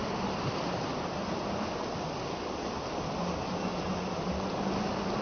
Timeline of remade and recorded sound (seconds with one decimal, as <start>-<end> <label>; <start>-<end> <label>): 0.0-3.1 remade; 3.1-5.2 recorded